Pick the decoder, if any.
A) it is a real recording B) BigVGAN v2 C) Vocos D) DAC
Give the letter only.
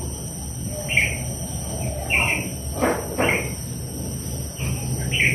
A